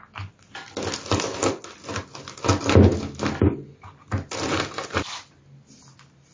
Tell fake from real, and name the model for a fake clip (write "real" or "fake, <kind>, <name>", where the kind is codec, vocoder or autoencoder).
real